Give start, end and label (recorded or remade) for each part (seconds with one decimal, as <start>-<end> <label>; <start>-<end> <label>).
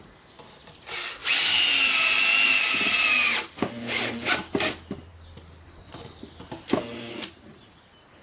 0.0-8.2 recorded